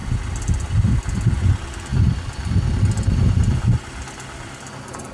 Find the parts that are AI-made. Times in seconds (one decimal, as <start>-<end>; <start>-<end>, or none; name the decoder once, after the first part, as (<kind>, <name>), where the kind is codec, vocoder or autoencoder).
none